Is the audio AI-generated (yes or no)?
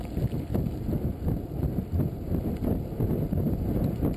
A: no